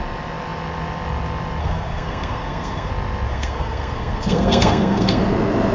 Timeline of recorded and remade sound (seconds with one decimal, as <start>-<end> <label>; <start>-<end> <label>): 0.0-1.6 recorded; 1.6-2.9 remade; 2.9-3.3 recorded; 3.3-5.2 remade; 5.2-5.7 recorded